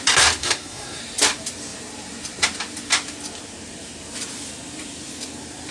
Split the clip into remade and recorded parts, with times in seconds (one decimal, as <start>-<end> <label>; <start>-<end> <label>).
0.0-0.4 recorded; 0.4-1.0 remade; 1.0-5.7 recorded